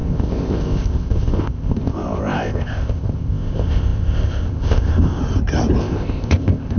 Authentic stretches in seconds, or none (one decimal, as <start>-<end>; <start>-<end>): 5.2-5.8